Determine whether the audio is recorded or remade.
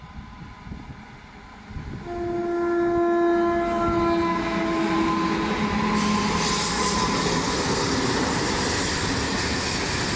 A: recorded